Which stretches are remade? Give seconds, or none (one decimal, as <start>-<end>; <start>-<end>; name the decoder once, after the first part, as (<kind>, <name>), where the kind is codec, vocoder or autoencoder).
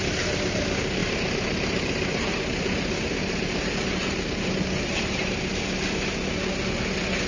1.0-5.3 (vocoder, BigVGAN v2)